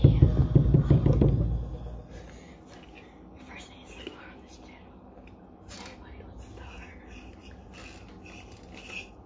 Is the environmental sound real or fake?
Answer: real